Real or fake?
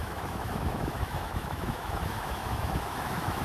fake